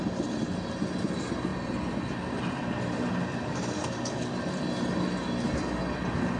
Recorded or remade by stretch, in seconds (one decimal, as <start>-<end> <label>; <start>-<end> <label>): 0.0-3.5 recorded; 3.5-4.4 remade; 4.4-6.4 recorded